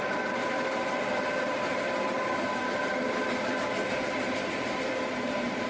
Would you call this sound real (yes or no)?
yes